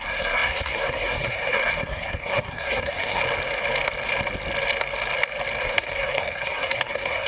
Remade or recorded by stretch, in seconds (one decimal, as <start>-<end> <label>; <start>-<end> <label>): 0.0-3.2 remade; 3.2-5.6 recorded; 5.6-7.3 remade